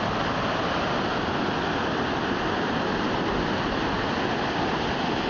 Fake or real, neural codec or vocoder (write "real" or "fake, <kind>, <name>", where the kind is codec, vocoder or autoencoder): real